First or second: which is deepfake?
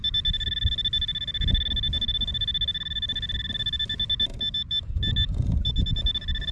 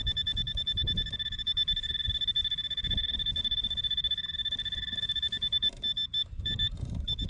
second